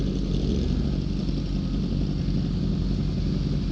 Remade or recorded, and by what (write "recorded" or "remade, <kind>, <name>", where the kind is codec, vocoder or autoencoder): recorded